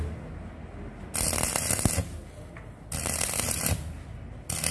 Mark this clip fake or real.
real